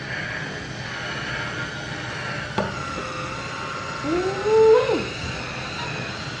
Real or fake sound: real